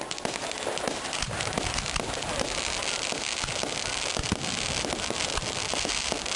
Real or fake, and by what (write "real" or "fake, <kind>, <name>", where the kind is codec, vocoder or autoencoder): real